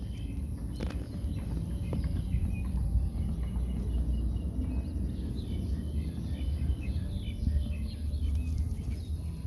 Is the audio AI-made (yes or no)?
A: no